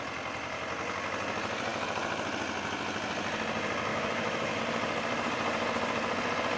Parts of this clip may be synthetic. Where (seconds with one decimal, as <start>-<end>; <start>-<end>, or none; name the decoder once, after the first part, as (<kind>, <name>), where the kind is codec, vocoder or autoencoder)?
3.9-4.6 (autoencoder, DAC-VAE)